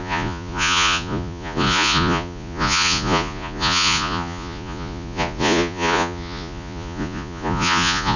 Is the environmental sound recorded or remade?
remade